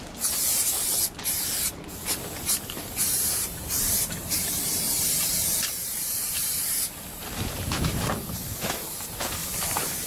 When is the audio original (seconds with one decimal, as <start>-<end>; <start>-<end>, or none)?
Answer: 0.0-0.5; 1.2-3.0; 8.2-9.4